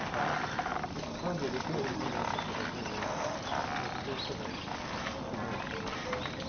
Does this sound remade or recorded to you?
recorded